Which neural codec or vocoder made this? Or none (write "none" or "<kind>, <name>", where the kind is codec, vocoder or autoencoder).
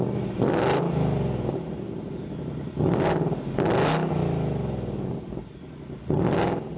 none